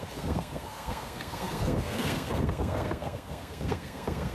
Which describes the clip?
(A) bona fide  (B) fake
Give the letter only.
B